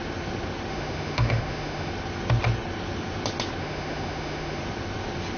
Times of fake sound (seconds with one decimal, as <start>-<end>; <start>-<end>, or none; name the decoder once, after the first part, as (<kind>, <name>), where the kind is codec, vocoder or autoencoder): 0.7-1.9 (autoencoder, DAC-VAE); 3.6-4.6